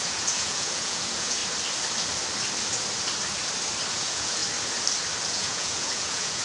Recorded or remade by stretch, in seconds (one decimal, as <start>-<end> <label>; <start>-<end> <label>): 0.0-1.4 remade; 1.4-3.9 recorded; 3.9-4.4 remade; 4.4-5.3 recorded; 5.3-6.4 remade